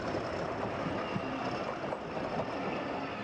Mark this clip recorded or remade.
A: recorded